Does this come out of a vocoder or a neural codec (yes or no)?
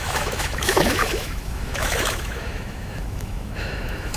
yes